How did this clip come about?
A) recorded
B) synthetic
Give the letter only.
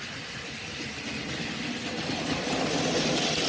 B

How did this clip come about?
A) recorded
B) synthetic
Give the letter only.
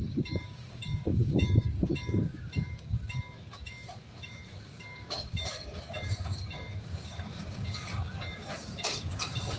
B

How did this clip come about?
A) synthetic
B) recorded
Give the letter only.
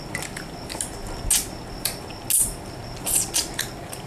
B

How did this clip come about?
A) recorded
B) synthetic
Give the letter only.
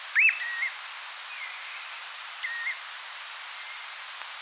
A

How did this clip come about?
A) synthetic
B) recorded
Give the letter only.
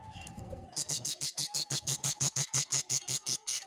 A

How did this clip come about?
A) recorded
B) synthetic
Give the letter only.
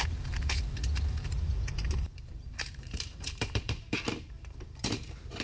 B